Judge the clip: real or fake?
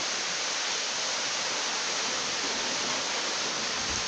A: real